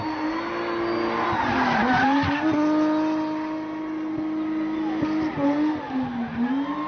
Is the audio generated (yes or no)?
no